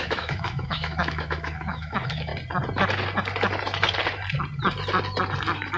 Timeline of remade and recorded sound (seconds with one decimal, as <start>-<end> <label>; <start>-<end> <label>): 0.0-2.3 remade; 2.3-5.8 recorded